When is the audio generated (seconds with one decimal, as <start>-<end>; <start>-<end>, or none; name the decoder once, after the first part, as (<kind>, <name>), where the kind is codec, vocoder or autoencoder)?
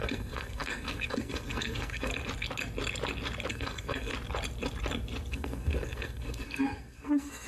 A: 0.0-2.1 (codec, SNAC); 3.5-4.1; 5.3-7.5